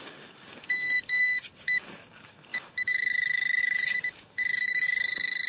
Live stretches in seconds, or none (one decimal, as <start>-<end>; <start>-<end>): none